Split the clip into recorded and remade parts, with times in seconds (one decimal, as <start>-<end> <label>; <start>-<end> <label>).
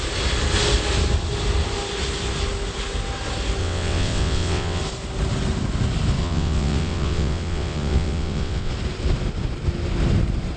0.0-3.6 recorded; 3.6-4.8 remade; 4.8-6.2 recorded; 6.2-8.7 remade; 8.7-10.6 recorded